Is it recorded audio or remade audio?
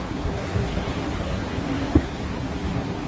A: remade